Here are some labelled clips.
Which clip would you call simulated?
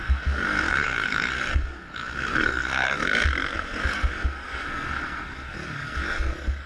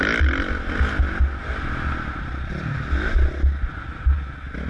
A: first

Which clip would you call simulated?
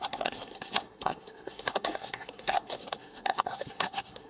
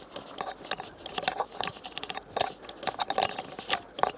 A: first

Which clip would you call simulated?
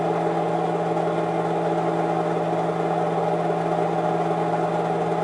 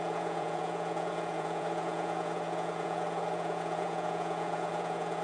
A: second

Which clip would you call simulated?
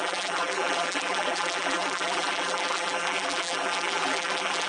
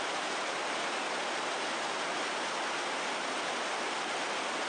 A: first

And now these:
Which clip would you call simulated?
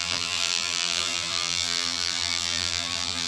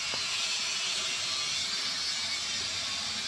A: first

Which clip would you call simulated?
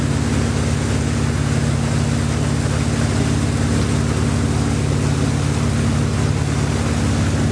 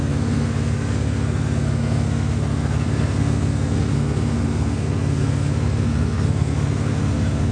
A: second